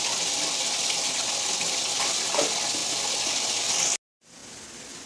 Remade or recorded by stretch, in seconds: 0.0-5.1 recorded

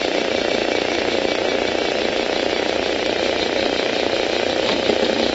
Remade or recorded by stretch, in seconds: 0.0-0.6 remade; 0.6-2.6 recorded; 2.6-5.3 remade

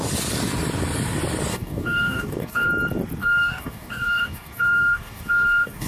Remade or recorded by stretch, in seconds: 0.0-1.5 recorded; 1.5-2.7 remade; 2.7-3.2 recorded; 3.2-5.9 remade

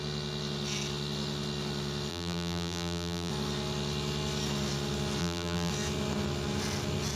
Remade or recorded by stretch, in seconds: 0.0-2.1 recorded; 2.1-3.3 remade; 3.3-5.2 recorded; 5.2-5.7 remade; 5.7-7.2 recorded